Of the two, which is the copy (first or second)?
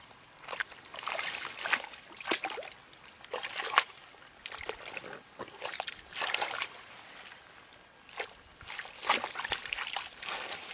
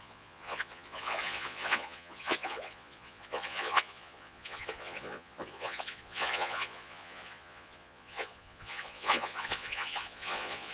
second